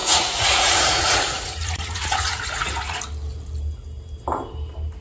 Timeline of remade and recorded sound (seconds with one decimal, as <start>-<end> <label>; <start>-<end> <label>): 0.0-3.0 remade; 3.0-5.0 recorded